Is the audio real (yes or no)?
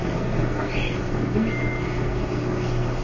no